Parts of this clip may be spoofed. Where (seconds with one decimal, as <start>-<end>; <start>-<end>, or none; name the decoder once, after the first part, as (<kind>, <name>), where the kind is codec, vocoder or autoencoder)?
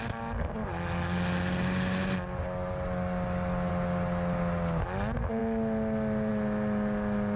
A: none